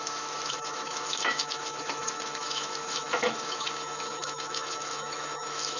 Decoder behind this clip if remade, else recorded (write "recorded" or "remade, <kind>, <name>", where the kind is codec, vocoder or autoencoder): remade, autoencoder, DAC-VAE